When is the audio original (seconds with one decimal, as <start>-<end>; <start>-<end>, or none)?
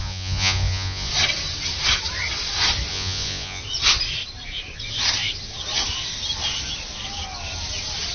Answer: 1.1-2.9; 3.6-8.1